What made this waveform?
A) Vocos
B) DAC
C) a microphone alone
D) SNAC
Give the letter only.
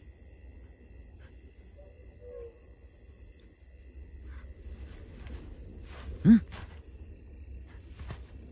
C